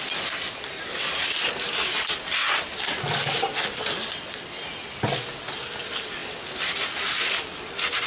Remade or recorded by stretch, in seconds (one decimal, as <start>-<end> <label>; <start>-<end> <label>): 0.0-8.1 recorded